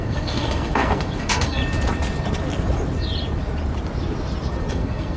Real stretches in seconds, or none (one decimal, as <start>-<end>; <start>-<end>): 1.6-4.7